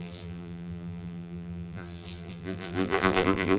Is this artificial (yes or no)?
yes